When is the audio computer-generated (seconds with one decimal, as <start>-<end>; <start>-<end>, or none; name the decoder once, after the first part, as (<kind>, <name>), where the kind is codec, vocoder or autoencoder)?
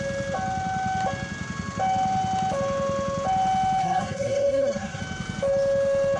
3.8-5.0 (codec, SNAC)